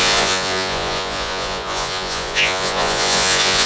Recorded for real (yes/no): no